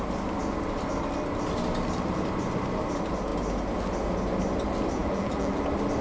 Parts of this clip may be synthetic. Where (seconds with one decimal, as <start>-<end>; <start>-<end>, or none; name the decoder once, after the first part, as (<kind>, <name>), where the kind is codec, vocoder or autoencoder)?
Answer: 5.0-5.6 (vocoder, BigVGAN v2)

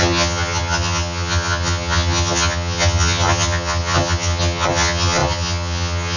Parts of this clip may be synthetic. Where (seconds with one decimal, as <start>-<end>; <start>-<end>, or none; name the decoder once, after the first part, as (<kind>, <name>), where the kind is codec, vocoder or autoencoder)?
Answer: 0.0-6.2 (vocoder, HiFi-GAN)

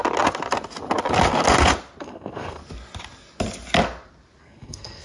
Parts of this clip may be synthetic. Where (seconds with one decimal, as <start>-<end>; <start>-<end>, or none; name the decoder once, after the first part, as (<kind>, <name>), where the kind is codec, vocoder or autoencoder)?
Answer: 2.0-2.6 (codec, SNAC); 4.4-5.0

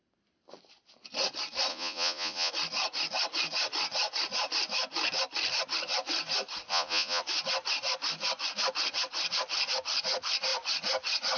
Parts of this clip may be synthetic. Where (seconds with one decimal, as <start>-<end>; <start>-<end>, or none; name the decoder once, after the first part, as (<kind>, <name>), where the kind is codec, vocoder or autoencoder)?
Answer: 1.7-2.5 (vocoder, Vocos); 6.7-7.2

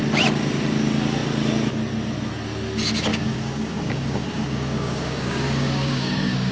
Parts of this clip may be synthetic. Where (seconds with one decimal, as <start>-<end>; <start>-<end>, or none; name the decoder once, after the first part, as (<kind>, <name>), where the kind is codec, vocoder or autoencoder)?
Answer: 3.1-6.5 (codec, DAC)

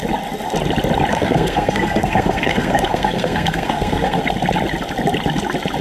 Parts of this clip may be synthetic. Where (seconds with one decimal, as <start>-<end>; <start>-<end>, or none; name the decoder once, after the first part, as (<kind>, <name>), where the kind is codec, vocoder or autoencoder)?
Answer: 1.1-4.2 (codec, SNAC)